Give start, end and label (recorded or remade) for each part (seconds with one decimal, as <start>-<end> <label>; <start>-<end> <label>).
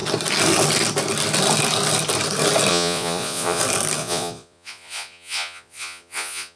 0.0-2.7 recorded; 2.7-3.6 remade; 3.6-4.0 recorded; 4.0-6.6 remade